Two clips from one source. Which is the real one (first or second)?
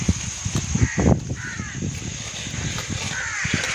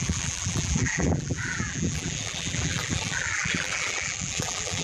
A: first